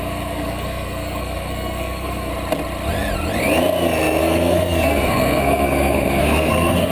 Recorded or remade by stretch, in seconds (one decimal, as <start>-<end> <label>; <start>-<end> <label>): 0.0-2.3 remade; 2.3-4.2 recorded; 4.2-6.9 remade